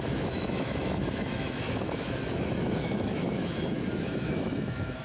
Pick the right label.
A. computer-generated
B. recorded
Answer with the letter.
A